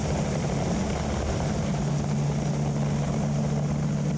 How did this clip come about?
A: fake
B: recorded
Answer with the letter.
B